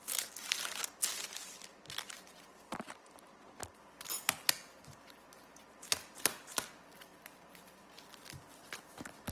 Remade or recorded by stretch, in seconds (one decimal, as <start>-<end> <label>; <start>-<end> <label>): 0.0-9.3 recorded